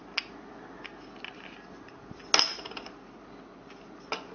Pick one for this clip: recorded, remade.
recorded